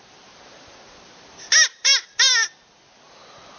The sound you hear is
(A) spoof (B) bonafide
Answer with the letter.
B